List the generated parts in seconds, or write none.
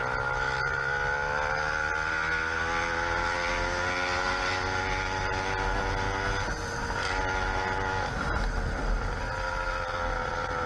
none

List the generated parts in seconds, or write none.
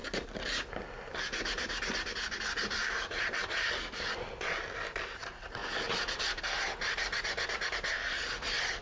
none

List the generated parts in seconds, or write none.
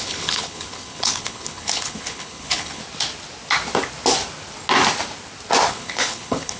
0.0-2.8; 5.7-6.6